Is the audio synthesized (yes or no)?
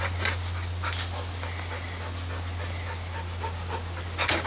no